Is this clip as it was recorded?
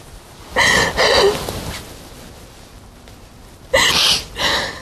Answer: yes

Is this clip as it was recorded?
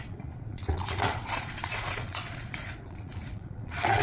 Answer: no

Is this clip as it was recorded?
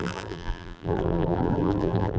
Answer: no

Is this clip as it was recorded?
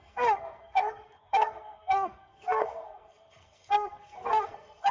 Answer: no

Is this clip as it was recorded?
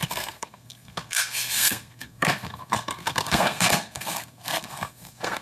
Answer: no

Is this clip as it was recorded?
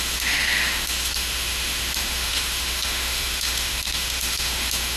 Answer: no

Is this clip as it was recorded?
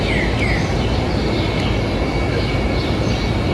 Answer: yes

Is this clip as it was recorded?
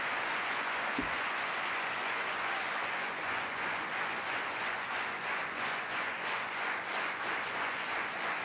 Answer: no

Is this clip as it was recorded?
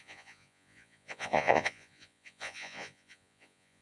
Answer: no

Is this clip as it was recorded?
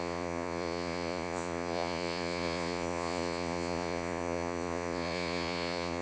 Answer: no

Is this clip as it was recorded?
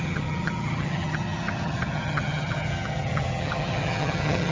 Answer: no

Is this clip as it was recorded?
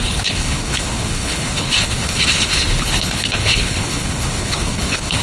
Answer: no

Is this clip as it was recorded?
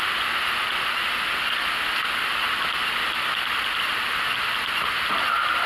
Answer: yes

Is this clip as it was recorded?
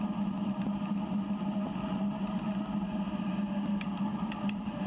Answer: yes